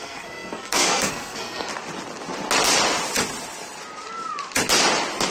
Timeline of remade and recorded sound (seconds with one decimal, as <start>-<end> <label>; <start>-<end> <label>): 0.0-1.7 remade; 1.7-5.3 recorded